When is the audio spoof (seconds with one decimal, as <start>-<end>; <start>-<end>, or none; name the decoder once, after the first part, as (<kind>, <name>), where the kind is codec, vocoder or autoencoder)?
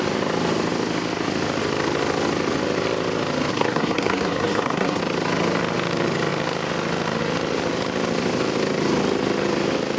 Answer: 3.5-5.0 (codec, SNAC)